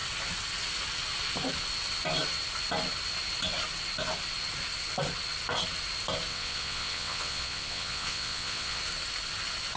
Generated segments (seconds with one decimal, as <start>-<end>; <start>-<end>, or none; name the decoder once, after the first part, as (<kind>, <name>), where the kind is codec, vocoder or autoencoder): 6.3-8.8 (vocoder, WaveNeXt)